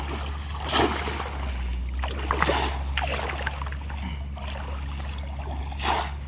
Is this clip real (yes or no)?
yes